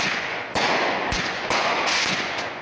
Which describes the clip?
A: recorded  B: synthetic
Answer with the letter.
B